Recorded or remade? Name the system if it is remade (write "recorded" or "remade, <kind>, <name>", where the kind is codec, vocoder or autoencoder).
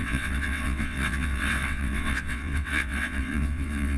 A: remade, vocoder, WaveNeXt